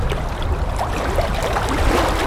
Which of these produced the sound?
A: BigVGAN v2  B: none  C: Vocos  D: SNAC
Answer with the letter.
B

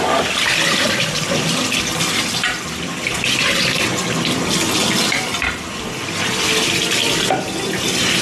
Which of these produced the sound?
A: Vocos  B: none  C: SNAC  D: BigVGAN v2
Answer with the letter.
B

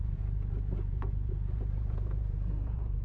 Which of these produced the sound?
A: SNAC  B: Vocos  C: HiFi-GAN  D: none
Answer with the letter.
B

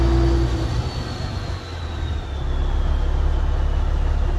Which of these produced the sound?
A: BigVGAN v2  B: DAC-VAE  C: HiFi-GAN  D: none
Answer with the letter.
D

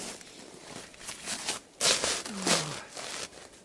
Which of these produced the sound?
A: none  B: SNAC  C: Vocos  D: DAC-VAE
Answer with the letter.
A